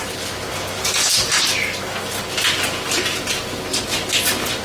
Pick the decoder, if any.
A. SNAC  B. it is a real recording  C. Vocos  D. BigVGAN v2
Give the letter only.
B